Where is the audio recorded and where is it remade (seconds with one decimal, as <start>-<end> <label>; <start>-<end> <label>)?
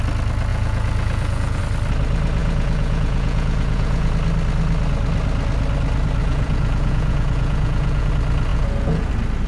0.0-0.5 recorded; 0.5-1.6 remade; 1.6-2.4 recorded; 2.4-4.1 remade; 4.1-6.2 recorded; 6.2-8.1 remade; 8.1-8.5 recorded; 8.5-9.1 remade; 9.1-9.5 recorded